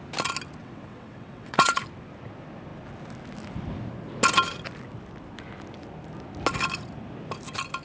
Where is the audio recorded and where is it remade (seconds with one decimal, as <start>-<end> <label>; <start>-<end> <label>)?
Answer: 0.0-0.6 recorded; 0.6-1.8 remade; 1.8-7.8 recorded